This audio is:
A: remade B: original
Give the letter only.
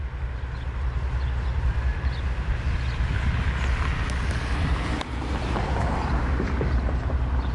B